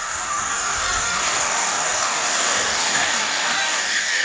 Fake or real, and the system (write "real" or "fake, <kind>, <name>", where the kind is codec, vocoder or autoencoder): fake, codec, DAC